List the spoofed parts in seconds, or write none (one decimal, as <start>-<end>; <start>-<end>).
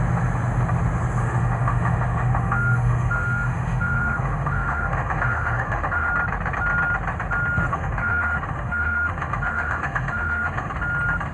1.2-6.1; 7.7-10.7